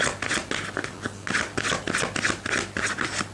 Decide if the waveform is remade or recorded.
recorded